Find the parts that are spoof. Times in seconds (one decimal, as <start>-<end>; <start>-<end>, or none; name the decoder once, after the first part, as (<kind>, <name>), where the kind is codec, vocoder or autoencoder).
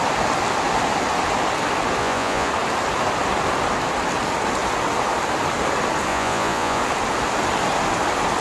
2.0-2.5 (vocoder, Vocos); 6.1-6.8